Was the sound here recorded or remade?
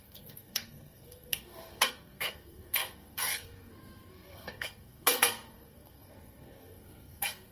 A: remade